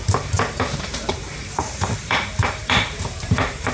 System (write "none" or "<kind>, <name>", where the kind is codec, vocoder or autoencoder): vocoder, BigVGAN v2